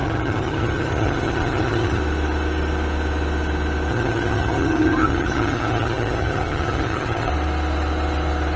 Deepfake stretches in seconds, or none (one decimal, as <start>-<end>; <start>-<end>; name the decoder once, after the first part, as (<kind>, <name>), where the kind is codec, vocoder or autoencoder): 0.0-2.0 (vocoder, HiFi-GAN); 3.9-7.3